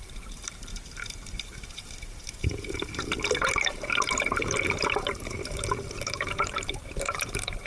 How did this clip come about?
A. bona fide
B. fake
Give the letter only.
B